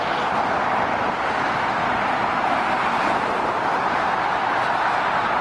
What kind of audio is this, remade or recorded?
remade